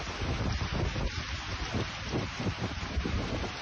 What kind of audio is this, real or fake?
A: real